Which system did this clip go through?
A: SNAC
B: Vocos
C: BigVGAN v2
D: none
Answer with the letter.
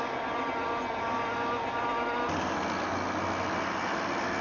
D